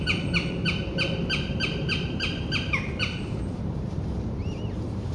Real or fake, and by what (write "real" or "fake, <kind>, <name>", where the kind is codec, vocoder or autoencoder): fake, vocoder, BigVGAN v2